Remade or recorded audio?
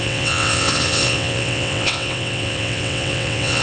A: remade